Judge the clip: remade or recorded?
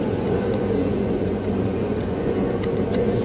remade